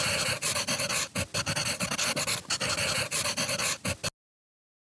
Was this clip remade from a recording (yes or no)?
no